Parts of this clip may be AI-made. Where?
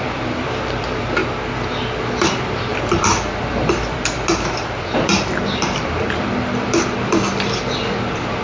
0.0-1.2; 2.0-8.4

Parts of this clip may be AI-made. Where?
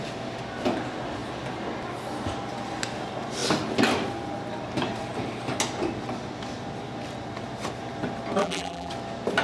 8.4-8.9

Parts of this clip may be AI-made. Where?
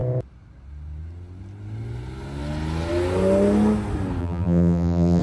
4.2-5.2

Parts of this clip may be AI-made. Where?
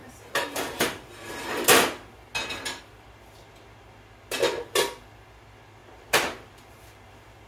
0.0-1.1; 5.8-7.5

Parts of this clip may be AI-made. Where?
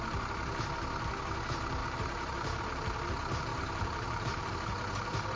1.8-2.6; 3.5-4.5